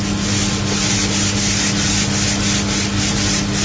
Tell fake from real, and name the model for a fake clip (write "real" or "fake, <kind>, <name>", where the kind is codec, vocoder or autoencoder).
real